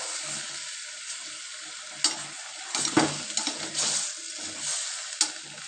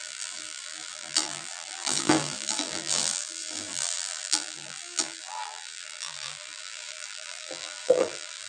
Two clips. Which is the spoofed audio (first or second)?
second